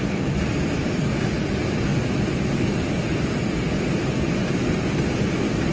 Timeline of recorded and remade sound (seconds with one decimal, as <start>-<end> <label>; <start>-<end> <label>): 0.0-1.9 remade; 1.9-3.0 recorded; 3.0-5.7 remade